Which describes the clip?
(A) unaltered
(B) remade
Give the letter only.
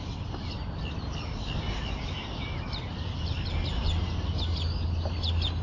A